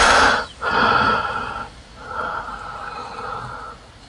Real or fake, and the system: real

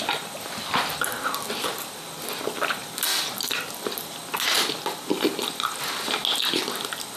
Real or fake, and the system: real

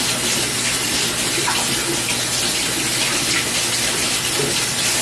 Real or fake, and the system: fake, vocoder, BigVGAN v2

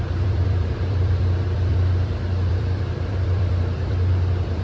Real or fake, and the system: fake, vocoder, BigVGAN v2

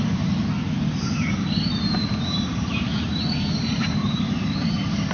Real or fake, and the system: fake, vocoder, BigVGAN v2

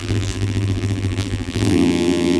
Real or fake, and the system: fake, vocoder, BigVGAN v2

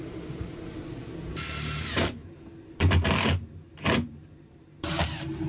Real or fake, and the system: fake, vocoder, BigVGAN v2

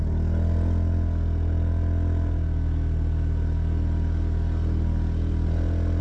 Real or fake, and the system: real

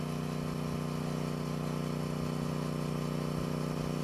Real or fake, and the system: real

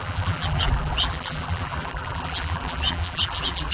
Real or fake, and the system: fake, vocoder, BigVGAN v2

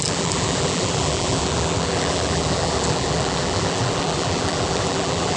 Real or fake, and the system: fake, vocoder, BigVGAN v2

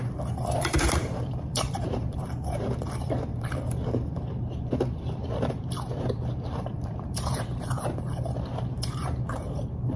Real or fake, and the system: fake, vocoder, BigVGAN v2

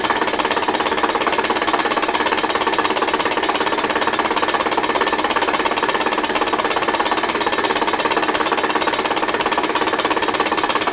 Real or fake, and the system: real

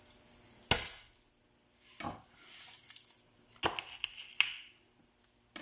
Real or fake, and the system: real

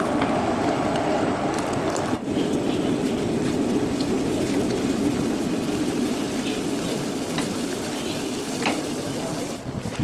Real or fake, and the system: fake, vocoder, BigVGAN v2